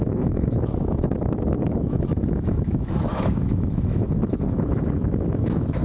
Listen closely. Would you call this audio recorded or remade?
remade